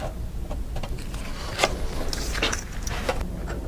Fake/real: real